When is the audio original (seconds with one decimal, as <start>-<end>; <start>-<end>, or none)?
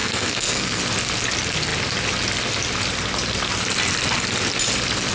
0.8-5.1